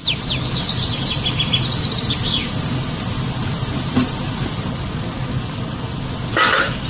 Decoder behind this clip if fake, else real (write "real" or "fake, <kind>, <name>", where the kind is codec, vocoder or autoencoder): real